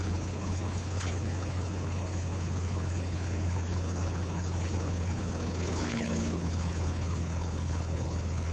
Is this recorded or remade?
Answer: remade